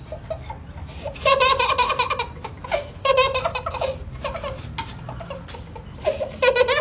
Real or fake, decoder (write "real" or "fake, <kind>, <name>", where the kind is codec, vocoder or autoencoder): real